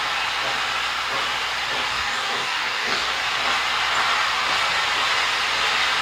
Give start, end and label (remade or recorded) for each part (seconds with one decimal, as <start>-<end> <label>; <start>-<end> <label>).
0.0-1.9 recorded; 1.9-3.1 remade; 3.1-6.0 recorded